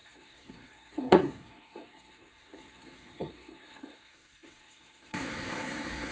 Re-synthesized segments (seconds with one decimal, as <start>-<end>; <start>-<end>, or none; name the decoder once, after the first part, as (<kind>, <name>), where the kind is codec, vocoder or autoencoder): 0.0-6.1 (codec, SNAC)